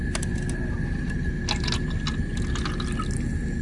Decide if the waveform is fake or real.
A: real